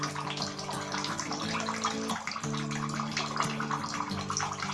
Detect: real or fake real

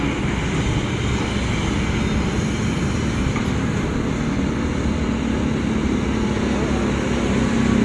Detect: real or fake real